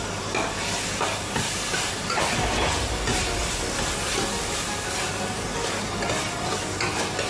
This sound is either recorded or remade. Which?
recorded